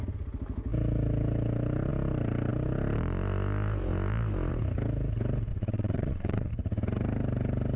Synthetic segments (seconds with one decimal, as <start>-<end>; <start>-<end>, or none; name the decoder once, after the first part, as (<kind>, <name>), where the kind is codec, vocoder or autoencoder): 5.5-6.5 (vocoder, WaveNeXt)